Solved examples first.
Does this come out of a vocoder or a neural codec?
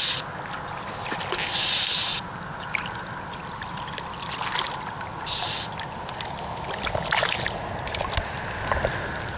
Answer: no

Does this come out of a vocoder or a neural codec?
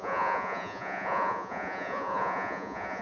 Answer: yes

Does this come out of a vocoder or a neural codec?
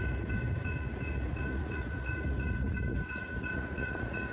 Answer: yes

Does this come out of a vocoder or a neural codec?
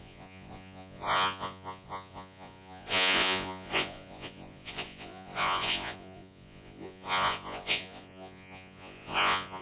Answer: yes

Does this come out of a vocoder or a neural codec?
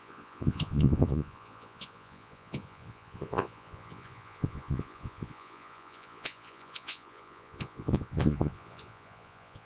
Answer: yes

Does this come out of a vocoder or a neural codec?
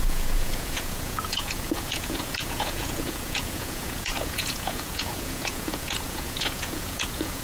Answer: yes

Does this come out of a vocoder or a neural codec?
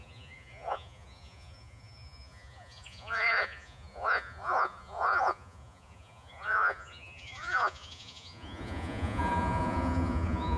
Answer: yes